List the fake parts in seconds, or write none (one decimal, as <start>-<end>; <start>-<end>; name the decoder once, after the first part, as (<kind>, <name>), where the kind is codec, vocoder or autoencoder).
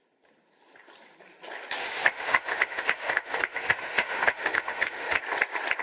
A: 1.8-5.2 (autoencoder, DAC-VAE)